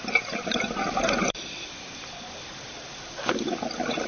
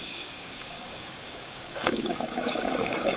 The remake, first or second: second